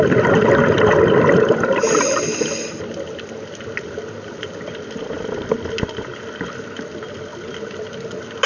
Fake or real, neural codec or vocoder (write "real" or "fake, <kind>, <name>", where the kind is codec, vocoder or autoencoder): real